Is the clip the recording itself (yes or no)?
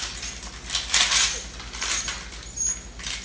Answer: yes